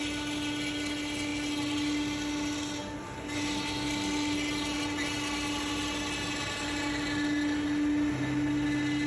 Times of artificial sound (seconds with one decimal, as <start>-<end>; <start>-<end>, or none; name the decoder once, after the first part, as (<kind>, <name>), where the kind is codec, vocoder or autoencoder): none

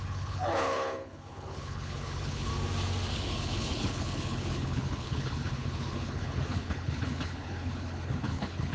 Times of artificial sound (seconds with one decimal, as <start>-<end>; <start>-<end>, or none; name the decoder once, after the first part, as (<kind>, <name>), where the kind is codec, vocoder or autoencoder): 0.0-2.5 (codec, HILCodec); 3.1-8.7

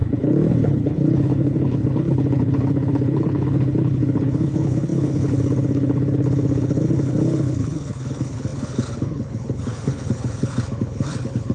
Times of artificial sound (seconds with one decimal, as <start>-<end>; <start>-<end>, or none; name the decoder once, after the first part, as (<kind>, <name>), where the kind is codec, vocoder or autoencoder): 0.0-11.5 (codec, HILCodec)